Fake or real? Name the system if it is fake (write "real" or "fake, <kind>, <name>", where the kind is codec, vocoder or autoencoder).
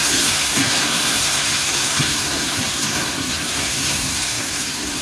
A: fake, codec, SNAC